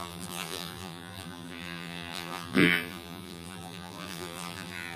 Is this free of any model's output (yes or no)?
no